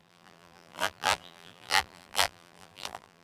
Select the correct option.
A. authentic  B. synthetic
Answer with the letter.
B